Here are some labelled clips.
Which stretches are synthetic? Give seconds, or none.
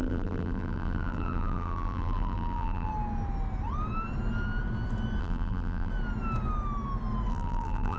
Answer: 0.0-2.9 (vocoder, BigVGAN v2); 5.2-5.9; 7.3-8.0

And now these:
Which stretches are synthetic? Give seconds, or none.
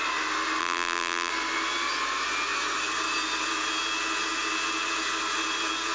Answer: 0.6-1.3 (vocoder, BigVGAN v2)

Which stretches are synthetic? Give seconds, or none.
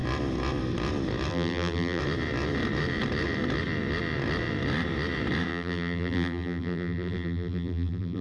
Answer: 1.3-2.0 (vocoder, BigVGAN v2); 5.5-8.2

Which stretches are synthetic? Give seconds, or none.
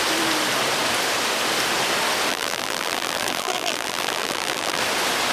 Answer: 2.3-4.8 (vocoder, BigVGAN v2)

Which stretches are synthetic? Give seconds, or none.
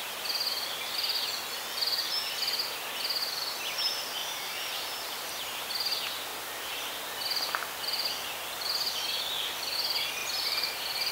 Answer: 4.2-5.7 (vocoder, BigVGAN v2); 6.3-6.8; 10.2-10.7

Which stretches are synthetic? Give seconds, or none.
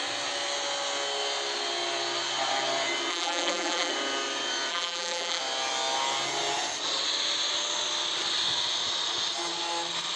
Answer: 3.1-3.9 (vocoder, BigVGAN v2); 4.7-5.4